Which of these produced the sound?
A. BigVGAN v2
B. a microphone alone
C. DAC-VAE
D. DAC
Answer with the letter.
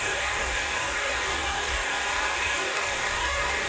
D